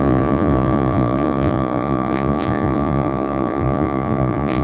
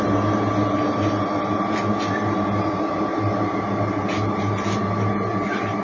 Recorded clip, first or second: second